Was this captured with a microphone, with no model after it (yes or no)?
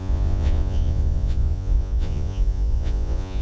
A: no